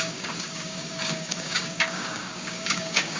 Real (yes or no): no